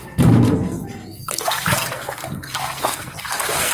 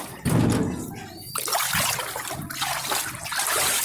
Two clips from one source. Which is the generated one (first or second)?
first